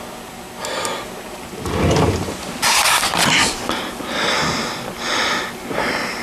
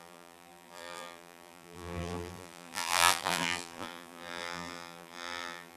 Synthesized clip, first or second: second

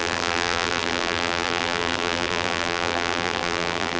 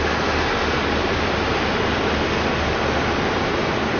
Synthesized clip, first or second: first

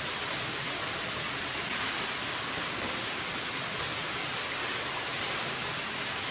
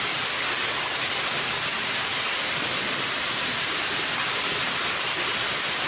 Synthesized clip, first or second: second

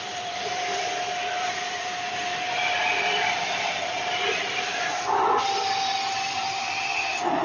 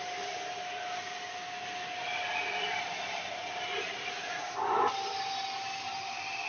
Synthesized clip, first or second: first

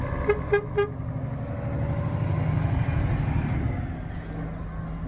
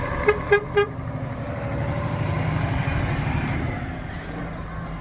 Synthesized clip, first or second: second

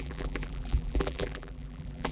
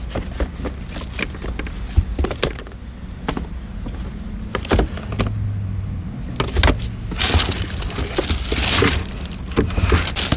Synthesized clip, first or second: first